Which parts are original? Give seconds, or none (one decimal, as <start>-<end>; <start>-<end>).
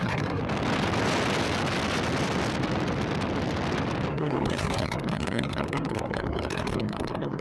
0.4-4.1